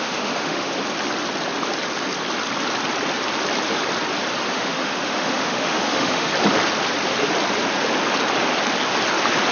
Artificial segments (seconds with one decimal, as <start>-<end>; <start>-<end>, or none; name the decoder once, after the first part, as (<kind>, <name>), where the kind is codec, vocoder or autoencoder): 0.0-0.7 (autoencoder, DAC-VAE); 4.5-6.3